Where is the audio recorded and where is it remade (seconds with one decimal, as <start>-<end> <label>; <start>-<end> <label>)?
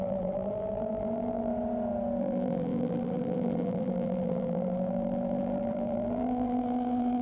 0.0-1.5 remade; 1.5-2.2 recorded; 2.2-7.2 remade